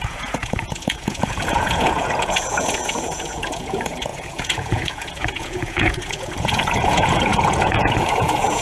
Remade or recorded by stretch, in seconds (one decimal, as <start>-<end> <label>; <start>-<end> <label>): 0.0-8.6 remade